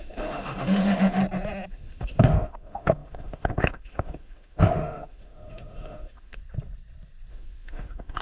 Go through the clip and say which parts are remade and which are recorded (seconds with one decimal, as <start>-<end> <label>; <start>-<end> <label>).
0.0-1.2 remade; 1.2-1.7 recorded; 1.7-6.4 remade; 6.4-7.3 recorded; 7.3-8.2 remade